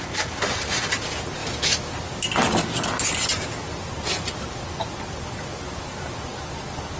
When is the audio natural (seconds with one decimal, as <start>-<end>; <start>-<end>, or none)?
0.0-1.4; 1.9-7.0